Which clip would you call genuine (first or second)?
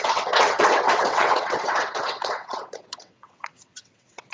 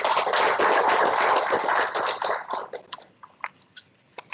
second